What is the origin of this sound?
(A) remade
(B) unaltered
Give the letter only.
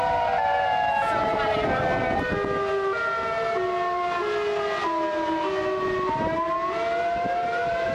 B